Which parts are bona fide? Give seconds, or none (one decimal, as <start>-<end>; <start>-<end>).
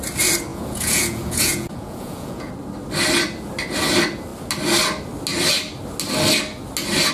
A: 0.0-0.5; 2.5-7.1